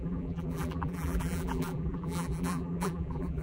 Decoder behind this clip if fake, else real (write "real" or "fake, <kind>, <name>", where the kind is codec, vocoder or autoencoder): fake, vocoder, BigVGAN v2